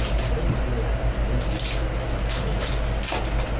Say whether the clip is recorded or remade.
recorded